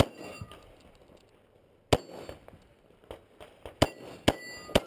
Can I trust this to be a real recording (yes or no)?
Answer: yes